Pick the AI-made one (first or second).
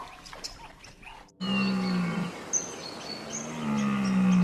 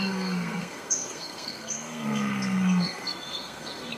second